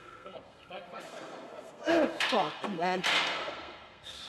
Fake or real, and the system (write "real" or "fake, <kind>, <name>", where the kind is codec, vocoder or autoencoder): fake, codec, SNAC